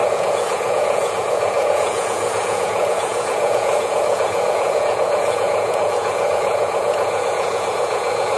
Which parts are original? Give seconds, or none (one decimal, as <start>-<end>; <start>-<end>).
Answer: none